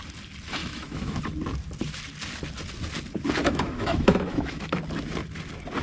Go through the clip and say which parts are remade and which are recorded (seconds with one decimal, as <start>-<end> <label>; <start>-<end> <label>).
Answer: 0.0-0.6 recorded; 0.6-1.2 remade; 1.2-3.4 recorded; 3.4-4.8 remade; 4.8-5.8 recorded